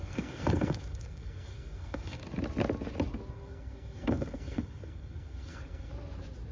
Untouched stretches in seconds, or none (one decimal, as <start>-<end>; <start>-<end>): 2.2-3.3; 5.9-6.5